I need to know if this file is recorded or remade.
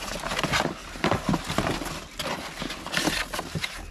recorded